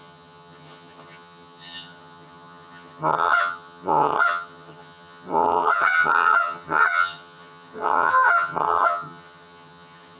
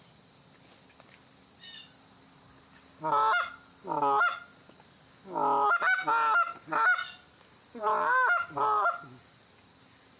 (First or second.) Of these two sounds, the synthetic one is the first